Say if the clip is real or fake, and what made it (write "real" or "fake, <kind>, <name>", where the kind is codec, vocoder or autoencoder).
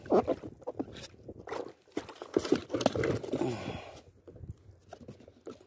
real